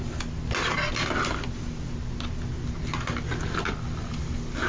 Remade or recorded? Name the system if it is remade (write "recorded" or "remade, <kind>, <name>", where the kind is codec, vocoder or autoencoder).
recorded